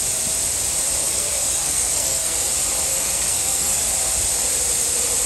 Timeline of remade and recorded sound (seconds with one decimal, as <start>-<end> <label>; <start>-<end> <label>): 0.0-1.0 recorded; 1.0-2.5 remade; 2.5-2.9 recorded; 2.9-3.9 remade; 3.9-5.3 recorded